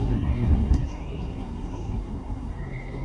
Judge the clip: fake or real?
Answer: fake